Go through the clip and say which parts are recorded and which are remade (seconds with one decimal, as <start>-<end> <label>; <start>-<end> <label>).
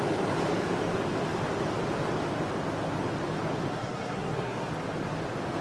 0.0-3.7 recorded; 3.7-4.7 remade; 4.7-5.6 recorded